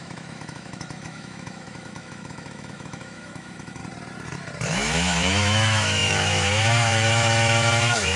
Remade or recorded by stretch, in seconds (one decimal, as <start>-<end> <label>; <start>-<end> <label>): 0.0-3.8 remade; 3.8-4.7 recorded; 4.7-8.2 remade